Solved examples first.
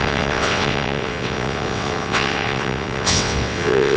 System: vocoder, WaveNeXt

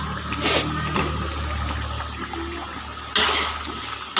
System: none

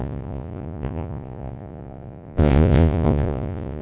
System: vocoder, Vocos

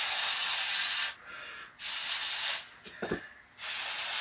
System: none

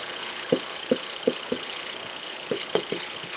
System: codec, HILCodec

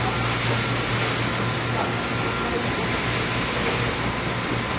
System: none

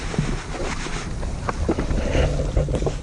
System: none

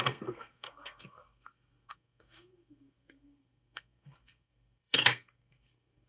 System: codec, SNAC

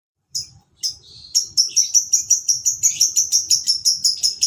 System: vocoder, BigVGAN v2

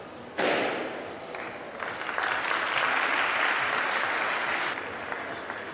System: none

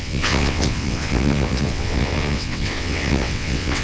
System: vocoder, WaveNeXt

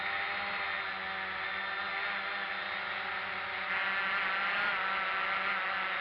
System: none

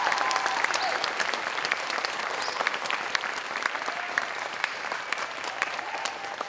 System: vocoder, BigVGAN v2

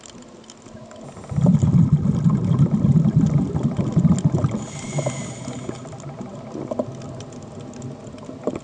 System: none